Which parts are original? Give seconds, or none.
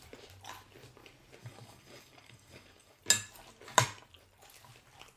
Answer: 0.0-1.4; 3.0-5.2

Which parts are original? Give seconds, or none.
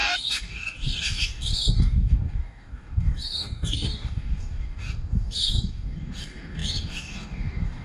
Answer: none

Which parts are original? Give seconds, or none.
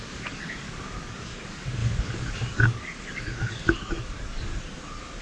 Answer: 4.5-5.2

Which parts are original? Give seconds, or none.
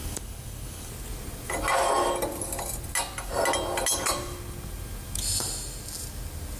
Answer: 0.9-6.6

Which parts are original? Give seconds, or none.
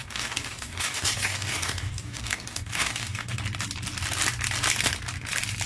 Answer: 3.4-5.7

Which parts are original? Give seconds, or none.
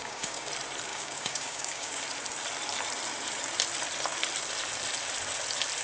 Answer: 0.5-0.9; 2.0-5.8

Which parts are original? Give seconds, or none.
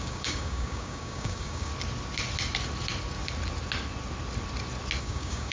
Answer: 1.7-5.0